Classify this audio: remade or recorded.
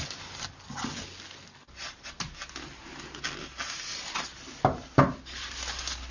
recorded